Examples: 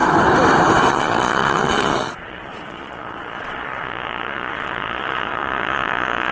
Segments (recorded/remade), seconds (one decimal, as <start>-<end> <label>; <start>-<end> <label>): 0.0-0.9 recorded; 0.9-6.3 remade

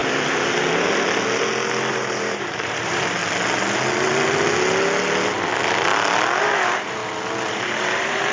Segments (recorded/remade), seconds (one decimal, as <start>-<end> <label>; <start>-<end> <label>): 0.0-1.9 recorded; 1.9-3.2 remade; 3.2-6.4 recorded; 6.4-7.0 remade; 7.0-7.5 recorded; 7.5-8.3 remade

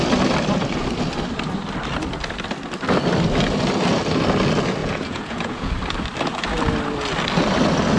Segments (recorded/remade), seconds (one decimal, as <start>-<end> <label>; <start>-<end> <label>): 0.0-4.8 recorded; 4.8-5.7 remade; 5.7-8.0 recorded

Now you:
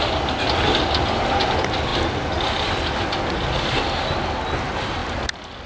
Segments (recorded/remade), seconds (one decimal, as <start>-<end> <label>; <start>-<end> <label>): 0.0-5.7 recorded